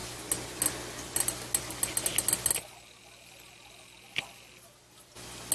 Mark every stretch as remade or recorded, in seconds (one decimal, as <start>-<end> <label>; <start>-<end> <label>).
0.0-5.5 recorded